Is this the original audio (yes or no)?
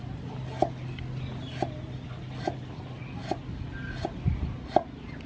yes